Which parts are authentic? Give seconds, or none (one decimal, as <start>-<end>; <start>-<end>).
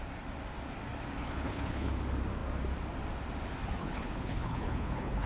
0.0-1.2; 1.9-3.8